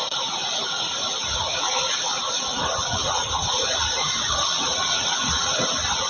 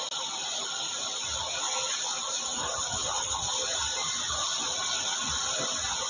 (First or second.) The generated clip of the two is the first